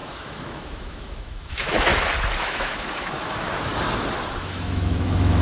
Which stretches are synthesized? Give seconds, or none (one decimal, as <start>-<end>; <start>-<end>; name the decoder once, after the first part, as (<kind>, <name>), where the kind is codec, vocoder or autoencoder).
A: 0.0-1.9 (autoencoder, DAC-VAE); 2.4-3.7; 4.4-5.4